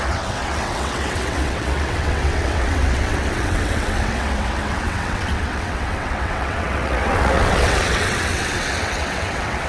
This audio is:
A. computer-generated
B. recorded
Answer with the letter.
A